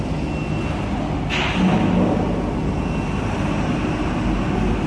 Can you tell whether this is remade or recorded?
recorded